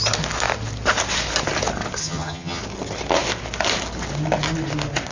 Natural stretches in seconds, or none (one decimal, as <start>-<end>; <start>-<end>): 0.0-2.0; 2.6-5.1